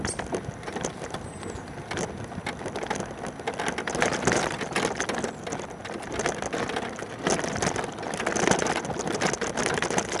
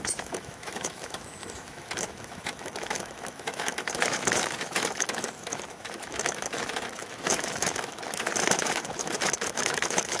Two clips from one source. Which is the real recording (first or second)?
first